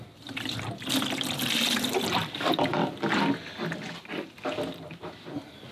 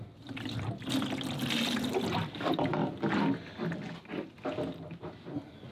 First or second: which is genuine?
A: second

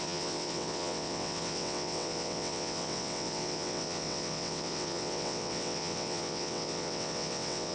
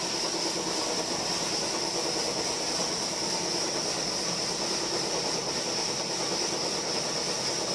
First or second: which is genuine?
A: second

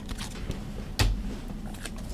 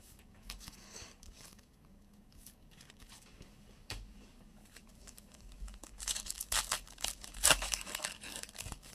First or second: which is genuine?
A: first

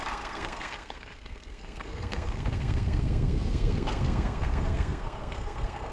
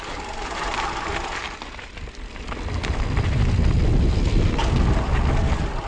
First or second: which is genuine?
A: second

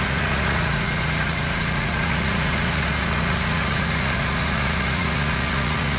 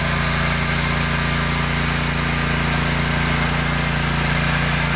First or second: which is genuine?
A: second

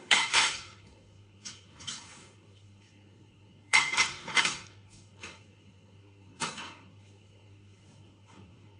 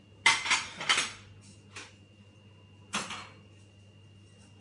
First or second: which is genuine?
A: second